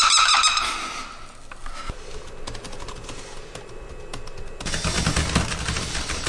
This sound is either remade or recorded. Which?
recorded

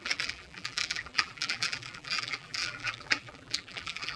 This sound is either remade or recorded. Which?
remade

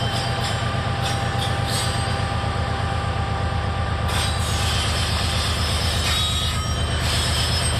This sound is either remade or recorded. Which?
remade